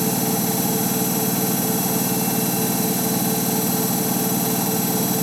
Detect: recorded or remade recorded